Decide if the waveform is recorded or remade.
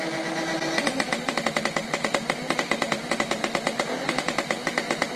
recorded